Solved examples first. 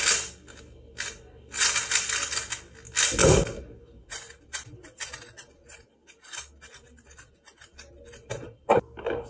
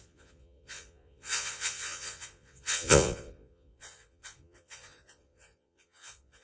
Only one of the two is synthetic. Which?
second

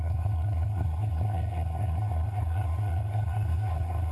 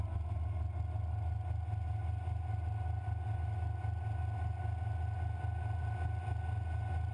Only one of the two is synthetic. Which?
first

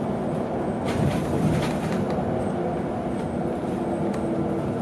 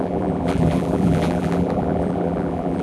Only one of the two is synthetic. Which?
second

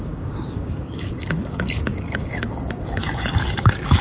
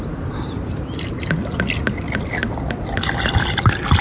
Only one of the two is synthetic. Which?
first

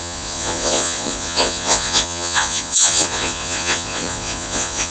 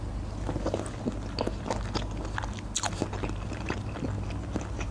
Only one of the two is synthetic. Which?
first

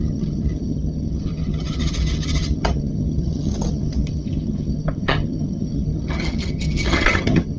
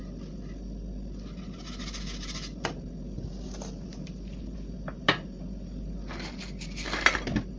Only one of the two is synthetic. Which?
first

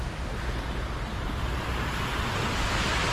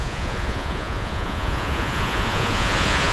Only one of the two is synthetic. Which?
second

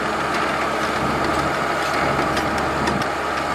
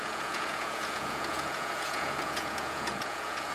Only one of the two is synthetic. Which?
second